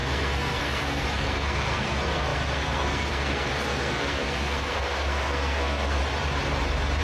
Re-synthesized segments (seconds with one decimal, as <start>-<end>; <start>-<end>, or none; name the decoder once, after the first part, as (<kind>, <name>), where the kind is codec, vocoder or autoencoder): 0.0-6.0 (codec, SNAC)